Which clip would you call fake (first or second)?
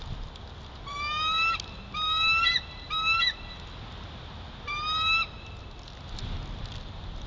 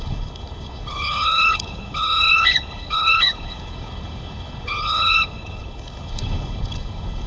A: second